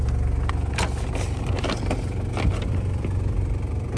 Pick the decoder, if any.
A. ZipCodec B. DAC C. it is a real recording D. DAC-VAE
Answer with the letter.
C